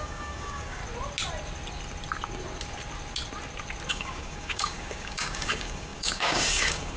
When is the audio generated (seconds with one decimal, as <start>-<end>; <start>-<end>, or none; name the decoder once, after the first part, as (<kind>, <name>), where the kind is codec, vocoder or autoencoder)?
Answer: 0.0-0.8 (codec, DAC); 3.9-7.0